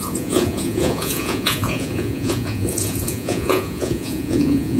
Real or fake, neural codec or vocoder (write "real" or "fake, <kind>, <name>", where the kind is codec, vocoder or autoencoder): fake, vocoder, Vocos